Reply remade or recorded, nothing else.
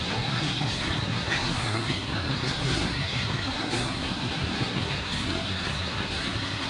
remade